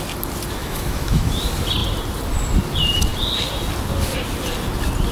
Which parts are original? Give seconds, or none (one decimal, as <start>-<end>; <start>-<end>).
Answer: 0.0-0.6; 1.3-5.1